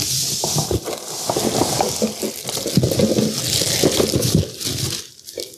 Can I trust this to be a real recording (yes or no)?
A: yes